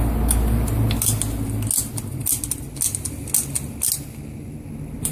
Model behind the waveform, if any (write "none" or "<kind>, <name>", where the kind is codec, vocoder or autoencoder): none